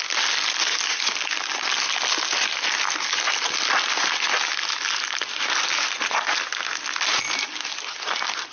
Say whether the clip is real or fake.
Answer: real